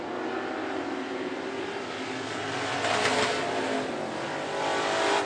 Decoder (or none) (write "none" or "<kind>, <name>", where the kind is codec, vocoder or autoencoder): none